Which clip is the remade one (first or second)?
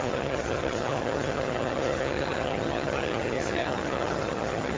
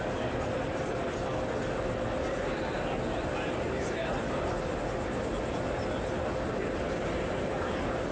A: first